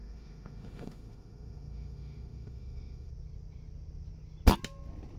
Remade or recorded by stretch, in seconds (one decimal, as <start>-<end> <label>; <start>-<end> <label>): 0.0-3.1 remade; 3.1-5.2 recorded